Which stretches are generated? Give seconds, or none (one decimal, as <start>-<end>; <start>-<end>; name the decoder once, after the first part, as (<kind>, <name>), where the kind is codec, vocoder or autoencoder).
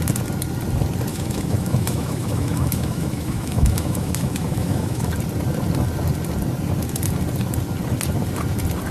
1.1-5.1 (autoencoder, DAC-VAE)